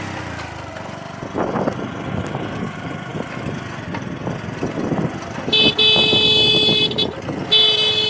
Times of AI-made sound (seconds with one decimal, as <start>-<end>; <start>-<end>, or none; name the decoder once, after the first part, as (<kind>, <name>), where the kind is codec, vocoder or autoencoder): none